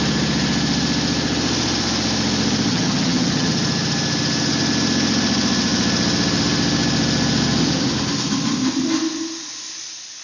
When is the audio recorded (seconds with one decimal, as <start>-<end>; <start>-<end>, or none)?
0.0-2.7; 3.5-10.2